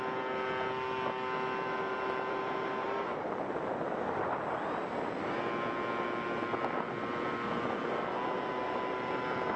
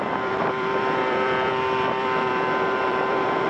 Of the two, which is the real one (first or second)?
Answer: first